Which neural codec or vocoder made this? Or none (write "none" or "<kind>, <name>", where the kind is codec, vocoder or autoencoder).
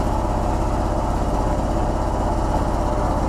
none